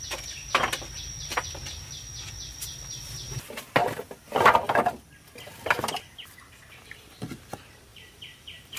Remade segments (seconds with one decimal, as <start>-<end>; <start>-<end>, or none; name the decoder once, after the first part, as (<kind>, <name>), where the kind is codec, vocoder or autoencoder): 7.9-8.8 (vocoder, BigVGAN v2)